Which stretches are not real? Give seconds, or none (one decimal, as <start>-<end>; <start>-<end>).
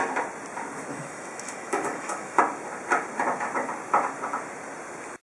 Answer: 0.9-2.4